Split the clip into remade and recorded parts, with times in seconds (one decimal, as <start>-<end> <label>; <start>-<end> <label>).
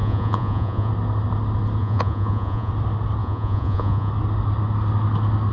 0.0-0.9 remade; 0.9-1.8 recorded; 1.8-2.7 remade; 2.7-3.2 recorded; 3.2-4.1 remade; 4.1-5.5 recorded